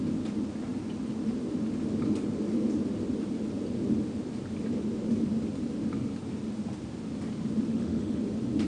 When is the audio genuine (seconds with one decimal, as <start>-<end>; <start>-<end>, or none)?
0.0-7.7; 8.2-8.7